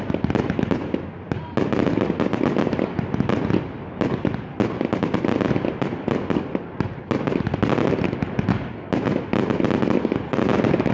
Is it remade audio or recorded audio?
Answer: recorded